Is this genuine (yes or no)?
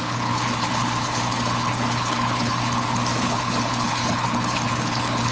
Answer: no